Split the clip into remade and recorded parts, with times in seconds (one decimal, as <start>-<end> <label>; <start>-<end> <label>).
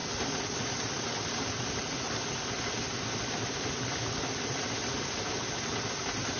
0.0-6.4 recorded